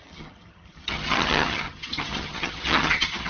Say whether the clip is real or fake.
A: fake